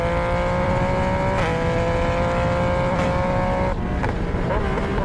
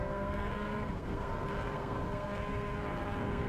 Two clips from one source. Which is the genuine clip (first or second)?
first